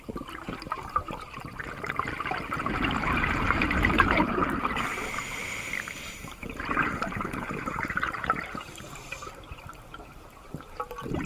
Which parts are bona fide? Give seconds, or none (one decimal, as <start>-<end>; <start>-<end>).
4.4-6.2